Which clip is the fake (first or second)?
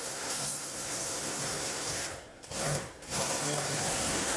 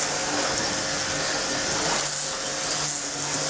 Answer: first